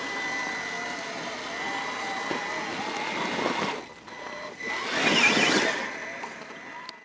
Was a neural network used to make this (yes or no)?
no